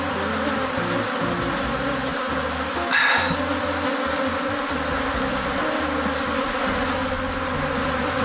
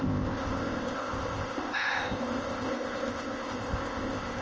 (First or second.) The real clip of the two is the first